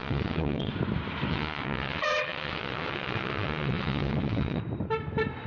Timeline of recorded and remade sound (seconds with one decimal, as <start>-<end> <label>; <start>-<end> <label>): 0.0-0.7 remade; 0.7-1.3 recorded; 1.3-4.6 remade; 4.6-5.5 recorded

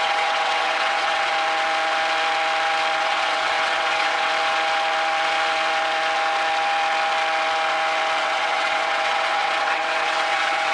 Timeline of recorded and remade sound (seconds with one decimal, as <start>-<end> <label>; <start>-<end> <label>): 0.0-1.3 remade; 1.3-3.0 recorded; 3.0-4.3 remade; 4.3-8.2 recorded; 8.2-10.7 remade